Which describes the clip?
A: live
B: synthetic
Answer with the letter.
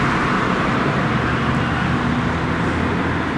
A